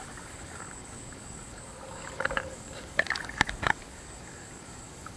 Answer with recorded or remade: remade